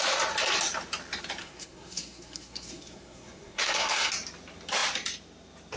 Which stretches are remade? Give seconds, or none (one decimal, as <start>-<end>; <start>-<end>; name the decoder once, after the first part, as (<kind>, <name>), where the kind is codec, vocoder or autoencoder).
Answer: 1.4-4.1 (codec, SNAC)